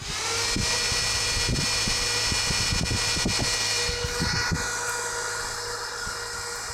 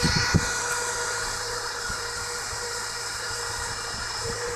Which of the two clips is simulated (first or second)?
second